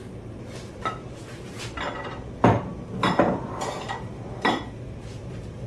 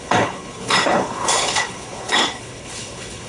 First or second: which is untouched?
first